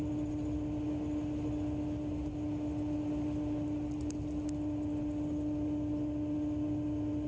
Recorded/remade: recorded